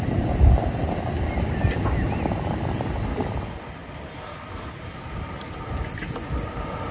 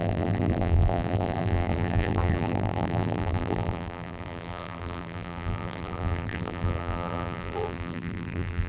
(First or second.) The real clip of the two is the first